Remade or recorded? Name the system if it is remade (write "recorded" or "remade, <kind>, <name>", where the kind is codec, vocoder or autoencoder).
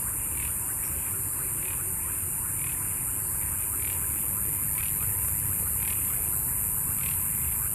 recorded